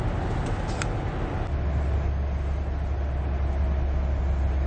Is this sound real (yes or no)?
yes